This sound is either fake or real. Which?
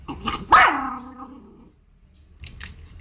fake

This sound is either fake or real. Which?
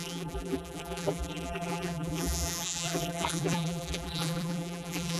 fake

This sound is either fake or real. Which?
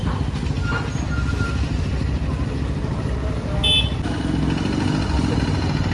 real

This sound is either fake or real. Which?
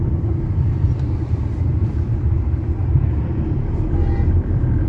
fake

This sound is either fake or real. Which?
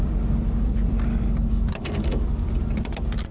fake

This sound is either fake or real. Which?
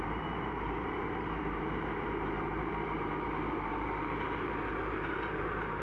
fake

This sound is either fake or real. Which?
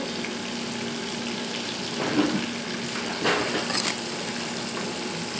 real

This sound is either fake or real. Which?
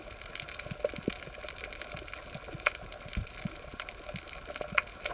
real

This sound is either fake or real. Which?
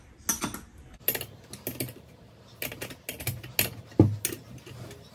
real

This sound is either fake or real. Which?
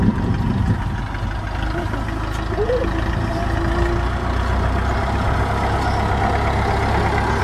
real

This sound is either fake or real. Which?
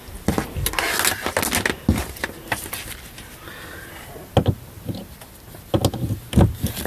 real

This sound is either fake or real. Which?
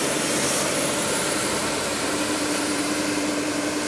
fake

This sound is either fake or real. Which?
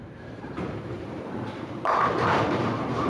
fake